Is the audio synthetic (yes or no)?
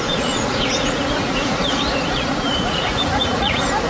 yes